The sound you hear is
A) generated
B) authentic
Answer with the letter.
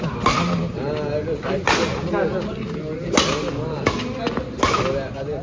B